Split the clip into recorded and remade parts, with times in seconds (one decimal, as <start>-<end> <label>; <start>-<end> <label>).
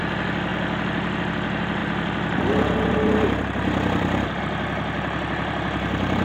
0.0-1.8 recorded; 1.8-4.4 remade; 4.4-6.2 recorded